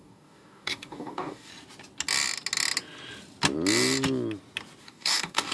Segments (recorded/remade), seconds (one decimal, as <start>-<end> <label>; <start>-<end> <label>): 0.0-1.5 remade; 1.5-4.8 recorded; 4.8-5.5 remade